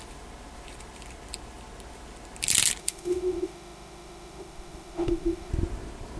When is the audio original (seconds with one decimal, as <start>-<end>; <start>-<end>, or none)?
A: 0.0-2.8; 5.5-6.2